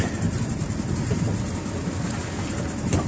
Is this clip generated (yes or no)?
no